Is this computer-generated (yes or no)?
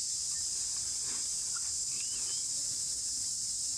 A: no